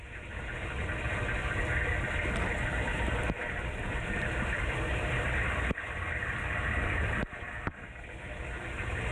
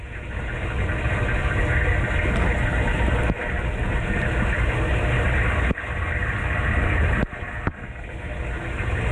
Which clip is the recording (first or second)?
second